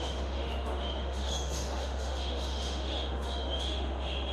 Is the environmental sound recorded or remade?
remade